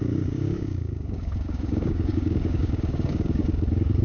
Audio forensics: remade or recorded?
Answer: remade